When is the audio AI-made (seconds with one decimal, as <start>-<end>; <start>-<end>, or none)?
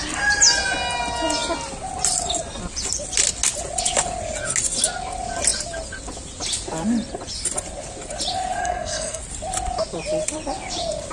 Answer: 8.6-9.2